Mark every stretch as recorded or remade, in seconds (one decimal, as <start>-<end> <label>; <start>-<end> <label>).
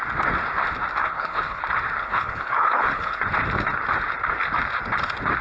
0.0-1.0 recorded; 1.0-1.6 remade; 1.6-2.0 recorded; 2.0-3.2 remade; 3.2-5.4 recorded